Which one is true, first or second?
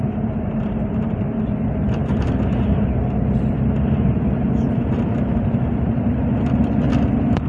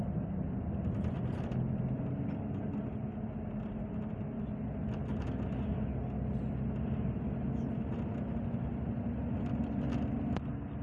second